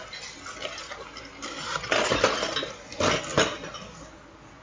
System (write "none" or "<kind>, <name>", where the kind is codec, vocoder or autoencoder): none